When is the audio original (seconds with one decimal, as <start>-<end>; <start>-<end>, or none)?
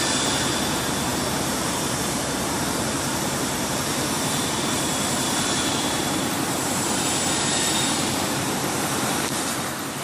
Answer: none